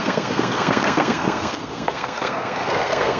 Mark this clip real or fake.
fake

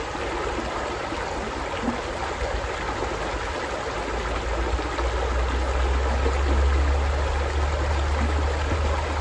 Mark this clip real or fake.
real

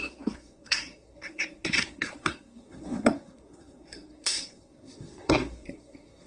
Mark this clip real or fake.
fake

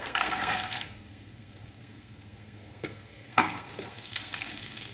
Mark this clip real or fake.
fake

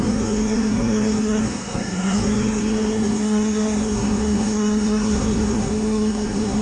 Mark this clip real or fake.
fake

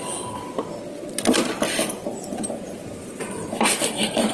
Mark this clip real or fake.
real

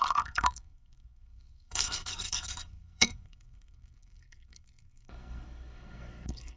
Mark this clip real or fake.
fake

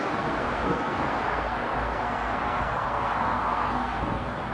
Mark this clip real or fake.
fake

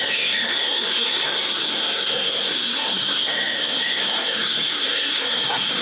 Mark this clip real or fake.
fake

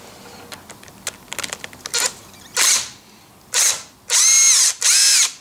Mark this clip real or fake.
real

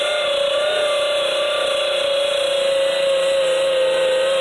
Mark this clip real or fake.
real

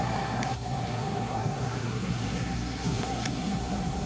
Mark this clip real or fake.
fake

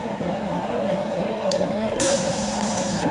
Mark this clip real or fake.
fake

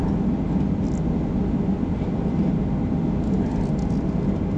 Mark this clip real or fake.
real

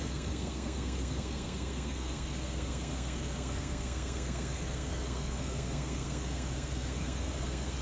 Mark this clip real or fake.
fake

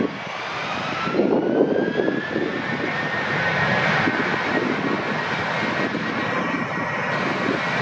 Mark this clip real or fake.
real